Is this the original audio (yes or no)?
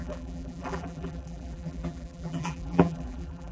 no